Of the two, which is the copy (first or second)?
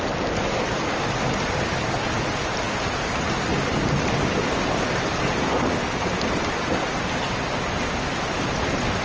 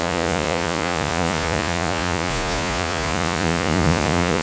second